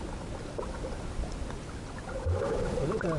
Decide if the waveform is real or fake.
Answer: real